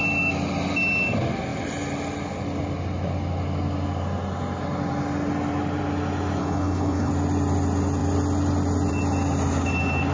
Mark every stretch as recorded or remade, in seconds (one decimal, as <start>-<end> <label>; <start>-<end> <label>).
0.0-6.4 recorded; 6.4-7.1 remade; 7.1-10.1 recorded